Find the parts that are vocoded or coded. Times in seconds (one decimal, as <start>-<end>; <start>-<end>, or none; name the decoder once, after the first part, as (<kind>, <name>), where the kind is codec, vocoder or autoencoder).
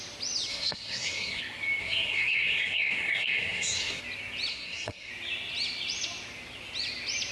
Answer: 0.5-1.4 (codec, SNAC); 1.8-4.0; 4.5-5.1